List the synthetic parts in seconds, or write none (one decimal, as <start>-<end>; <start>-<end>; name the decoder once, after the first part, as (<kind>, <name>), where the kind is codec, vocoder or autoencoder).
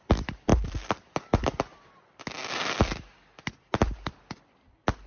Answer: none